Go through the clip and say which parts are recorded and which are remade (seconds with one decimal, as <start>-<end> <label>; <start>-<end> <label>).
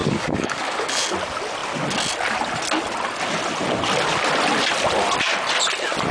0.0-0.9 remade; 0.9-6.1 recorded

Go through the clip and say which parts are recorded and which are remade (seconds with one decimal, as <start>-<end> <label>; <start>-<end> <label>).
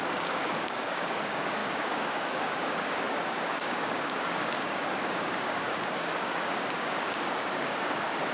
0.0-8.3 remade